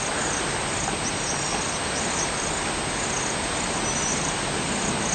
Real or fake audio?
real